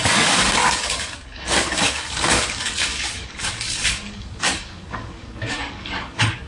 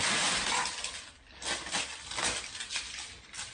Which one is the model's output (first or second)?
first